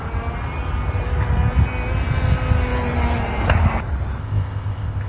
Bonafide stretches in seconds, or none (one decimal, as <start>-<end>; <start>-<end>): 0.0-4.2